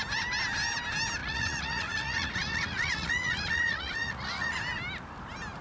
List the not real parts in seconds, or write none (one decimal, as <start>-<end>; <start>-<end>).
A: 1.2-4.6